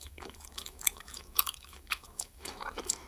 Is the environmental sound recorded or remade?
remade